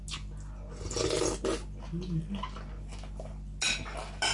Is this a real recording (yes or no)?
yes